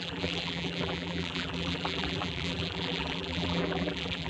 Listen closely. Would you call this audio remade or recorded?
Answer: remade